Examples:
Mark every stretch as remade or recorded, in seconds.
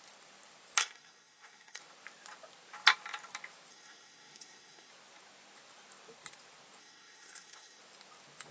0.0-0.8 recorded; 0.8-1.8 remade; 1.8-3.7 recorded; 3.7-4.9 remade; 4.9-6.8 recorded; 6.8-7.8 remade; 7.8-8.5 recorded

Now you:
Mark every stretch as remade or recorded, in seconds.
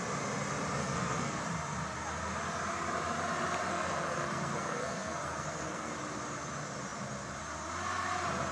0.0-0.8 recorded; 0.8-1.4 remade; 1.4-3.7 recorded; 3.7-5.9 remade; 5.9-8.5 recorded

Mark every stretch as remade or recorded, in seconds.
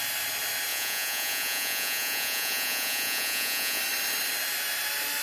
0.0-0.7 recorded; 0.7-3.8 remade; 3.8-5.2 recorded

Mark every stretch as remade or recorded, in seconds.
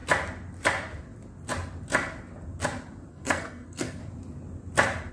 0.0-3.1 recorded; 3.1-4.0 remade; 4.0-5.1 recorded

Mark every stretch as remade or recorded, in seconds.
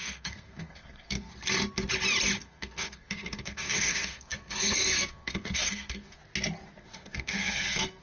0.0-1.3 remade; 1.3-2.4 recorded; 2.4-6.2 remade; 6.2-6.8 recorded; 6.8-8.0 remade